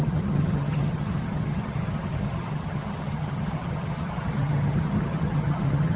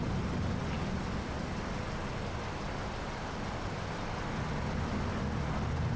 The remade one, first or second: first